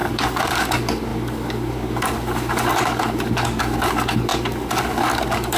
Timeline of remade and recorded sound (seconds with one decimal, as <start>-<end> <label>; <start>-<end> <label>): 0.0-5.6 remade